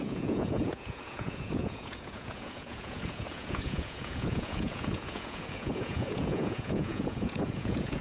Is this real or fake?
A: fake